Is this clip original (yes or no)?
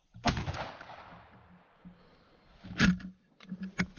yes